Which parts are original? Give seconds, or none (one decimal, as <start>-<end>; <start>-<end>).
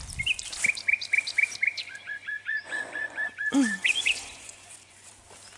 0.0-1.7; 5.1-5.6